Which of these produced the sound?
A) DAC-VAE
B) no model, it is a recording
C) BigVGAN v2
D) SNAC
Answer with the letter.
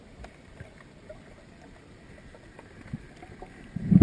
B